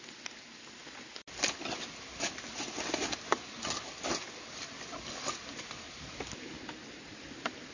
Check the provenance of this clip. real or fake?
real